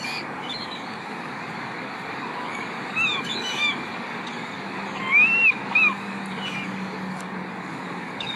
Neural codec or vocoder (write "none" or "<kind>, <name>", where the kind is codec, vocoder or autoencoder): codec, DAC